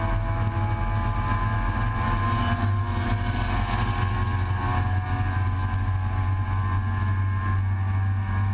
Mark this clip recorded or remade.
recorded